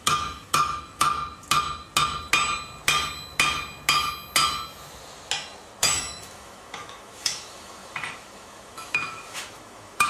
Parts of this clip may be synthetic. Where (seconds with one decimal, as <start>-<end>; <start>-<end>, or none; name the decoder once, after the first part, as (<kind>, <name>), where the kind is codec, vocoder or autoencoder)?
0.0-1.1 (autoencoder, DAC-VAE); 5.8-10.1